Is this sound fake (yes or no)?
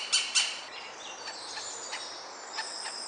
no